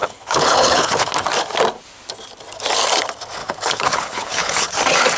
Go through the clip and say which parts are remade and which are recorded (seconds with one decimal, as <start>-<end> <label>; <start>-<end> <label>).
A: 0.0-1.1 remade; 1.1-3.4 recorded; 3.4-4.8 remade; 4.8-5.2 recorded